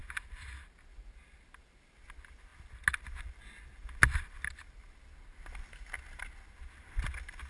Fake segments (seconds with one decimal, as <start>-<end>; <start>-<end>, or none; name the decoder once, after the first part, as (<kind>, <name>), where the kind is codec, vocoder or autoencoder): none